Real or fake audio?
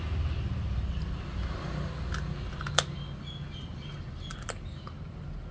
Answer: real